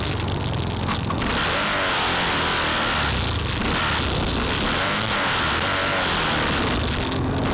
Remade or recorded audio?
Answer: recorded